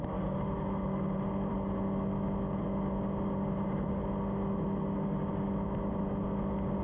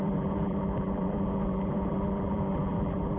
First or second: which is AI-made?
second